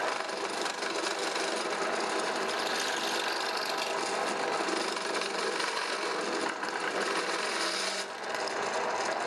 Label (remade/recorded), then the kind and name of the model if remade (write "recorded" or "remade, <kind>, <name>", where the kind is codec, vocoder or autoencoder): recorded